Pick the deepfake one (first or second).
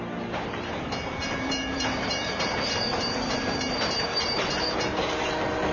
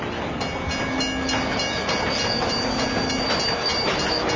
first